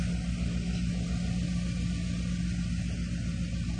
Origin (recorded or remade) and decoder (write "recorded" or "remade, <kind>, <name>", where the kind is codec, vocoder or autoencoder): recorded